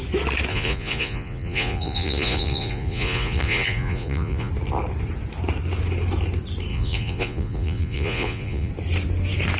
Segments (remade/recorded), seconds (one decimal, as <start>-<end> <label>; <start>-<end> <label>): 0.0-0.5 recorded; 0.5-4.5 remade; 4.5-6.7 recorded; 6.7-8.7 remade; 8.7-9.6 recorded

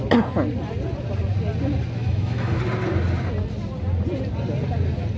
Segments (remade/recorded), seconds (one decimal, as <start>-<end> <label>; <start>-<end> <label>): 0.0-2.0 recorded; 2.0-2.6 remade; 2.6-5.2 recorded

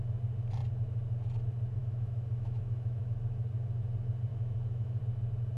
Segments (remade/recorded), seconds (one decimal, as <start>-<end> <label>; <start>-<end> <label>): 0.0-1.8 recorded; 1.8-3.2 remade; 3.2-4.3 recorded; 4.3-5.0 remade; 5.0-5.6 recorded

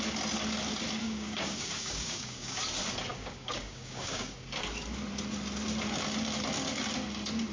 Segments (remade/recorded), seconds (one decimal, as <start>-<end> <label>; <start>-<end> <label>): 0.0-1.0 recorded; 1.0-2.6 remade; 2.6-3.1 recorded; 3.1-4.6 remade; 4.6-7.5 recorded

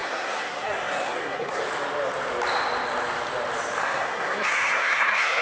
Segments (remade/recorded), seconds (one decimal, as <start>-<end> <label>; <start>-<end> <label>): 0.0-1.6 remade; 1.6-3.8 recorded; 3.8-5.4 remade

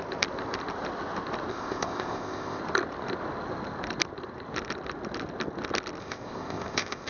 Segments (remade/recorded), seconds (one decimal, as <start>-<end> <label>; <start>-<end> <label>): 0.0-1.5 recorded; 1.5-2.6 remade; 2.6-6.0 recorded; 6.0-7.1 remade

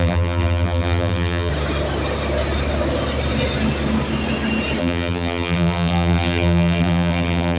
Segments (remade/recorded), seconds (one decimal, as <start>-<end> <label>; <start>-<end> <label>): 0.0-1.5 remade; 1.5-4.8 recorded; 4.8-7.6 remade

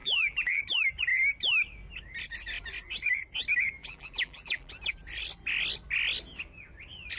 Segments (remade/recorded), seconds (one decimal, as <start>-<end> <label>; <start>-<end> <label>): 0.0-0.6 remade; 0.6-3.8 recorded; 3.8-4.7 remade; 4.7-7.2 recorded